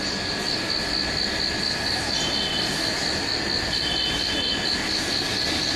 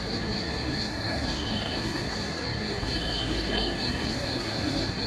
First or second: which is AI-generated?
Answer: second